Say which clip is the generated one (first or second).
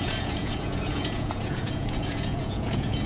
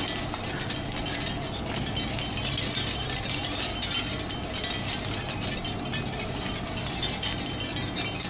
first